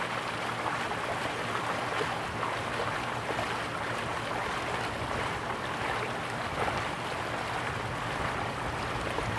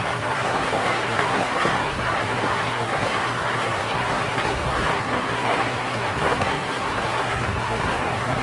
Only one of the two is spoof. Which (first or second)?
second